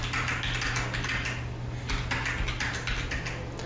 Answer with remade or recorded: recorded